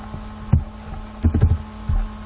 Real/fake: real